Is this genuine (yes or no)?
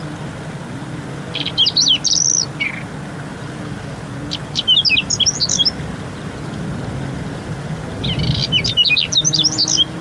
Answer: yes